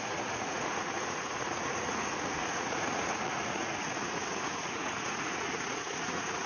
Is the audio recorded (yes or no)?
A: no